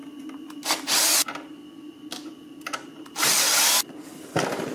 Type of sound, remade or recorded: recorded